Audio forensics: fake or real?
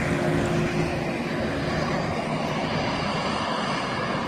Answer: real